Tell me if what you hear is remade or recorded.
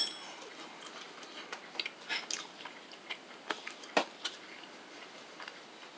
recorded